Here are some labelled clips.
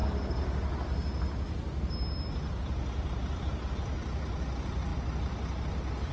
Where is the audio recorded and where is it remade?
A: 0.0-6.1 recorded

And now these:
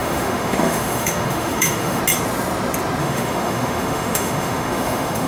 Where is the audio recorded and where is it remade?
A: 0.0-2.0 remade; 2.0-3.0 recorded; 3.0-5.3 remade

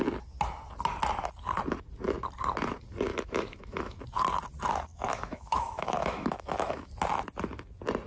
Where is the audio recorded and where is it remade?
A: 0.0-3.1 recorded; 3.1-4.0 remade; 4.0-4.9 recorded; 4.9-6.9 remade; 6.9-8.1 recorded

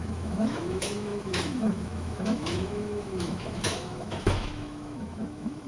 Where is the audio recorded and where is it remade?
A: 0.0-5.7 remade

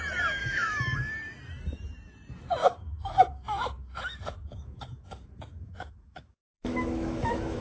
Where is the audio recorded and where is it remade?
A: 0.0-0.4 recorded; 0.4-1.1 remade; 1.1-2.6 recorded; 2.6-7.6 remade

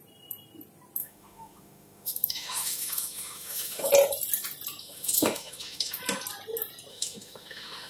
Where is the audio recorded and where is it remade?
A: 0.0-1.0 recorded; 1.0-3.9 remade; 3.9-4.8 recorded; 4.8-6.0 remade; 6.0-6.9 recorded; 6.9-7.9 remade